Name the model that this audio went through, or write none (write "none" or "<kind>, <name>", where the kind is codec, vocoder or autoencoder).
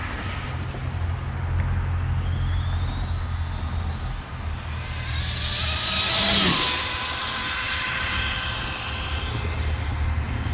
none